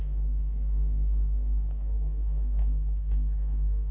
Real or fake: fake